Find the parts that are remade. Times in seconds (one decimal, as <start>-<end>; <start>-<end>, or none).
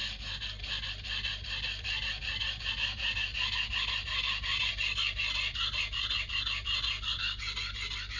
none